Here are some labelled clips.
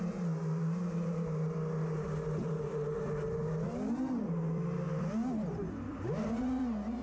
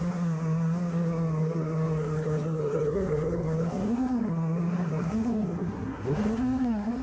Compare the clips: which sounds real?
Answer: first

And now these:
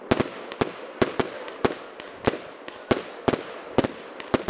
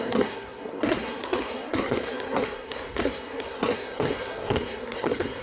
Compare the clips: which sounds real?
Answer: first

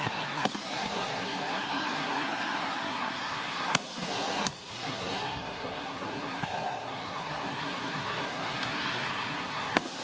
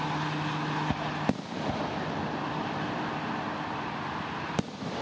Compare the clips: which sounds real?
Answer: second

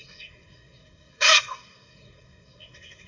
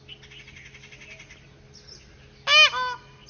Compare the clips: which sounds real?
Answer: second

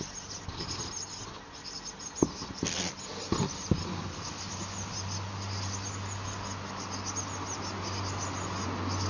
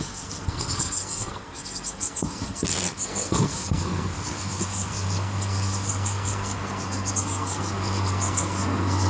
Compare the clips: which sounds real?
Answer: first